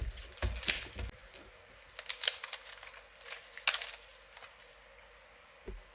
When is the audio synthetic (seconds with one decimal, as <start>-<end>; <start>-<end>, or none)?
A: none